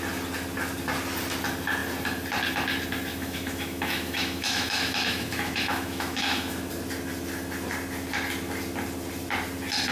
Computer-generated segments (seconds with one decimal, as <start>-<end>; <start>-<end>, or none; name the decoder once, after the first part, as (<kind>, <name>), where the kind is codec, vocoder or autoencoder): 3.1-6.7 (autoencoder, DAC-VAE)